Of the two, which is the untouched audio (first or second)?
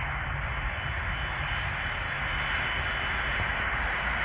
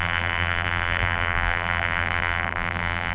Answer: first